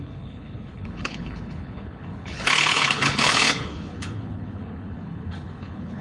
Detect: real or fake fake